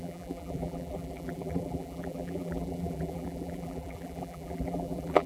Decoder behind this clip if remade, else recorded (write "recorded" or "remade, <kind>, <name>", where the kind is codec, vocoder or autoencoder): remade, vocoder, BigVGAN v2